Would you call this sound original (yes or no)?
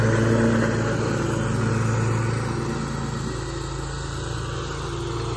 yes